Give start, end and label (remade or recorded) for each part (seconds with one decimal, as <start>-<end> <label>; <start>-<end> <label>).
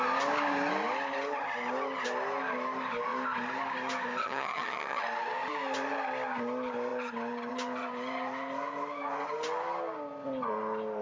0.0-4.2 recorded; 4.2-5.0 remade; 5.0-11.0 recorded